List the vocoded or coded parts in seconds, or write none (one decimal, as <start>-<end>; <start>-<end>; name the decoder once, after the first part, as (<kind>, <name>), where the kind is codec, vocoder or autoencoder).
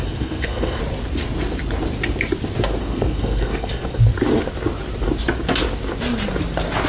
0.0-0.8 (codec, SNAC); 2.8-4.0